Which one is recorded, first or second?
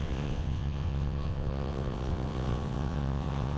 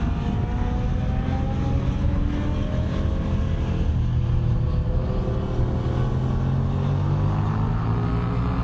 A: second